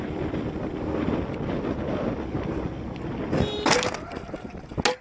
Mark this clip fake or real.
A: real